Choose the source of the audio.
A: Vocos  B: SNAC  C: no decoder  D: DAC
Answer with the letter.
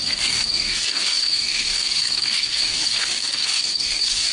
D